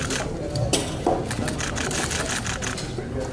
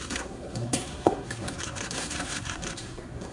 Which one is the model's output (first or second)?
second